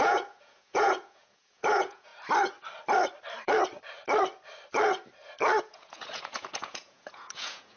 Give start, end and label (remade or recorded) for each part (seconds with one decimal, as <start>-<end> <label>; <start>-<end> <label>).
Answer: 0.0-2.1 remade; 2.1-5.6 recorded; 5.6-7.8 remade